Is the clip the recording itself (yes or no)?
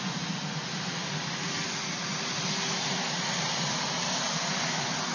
yes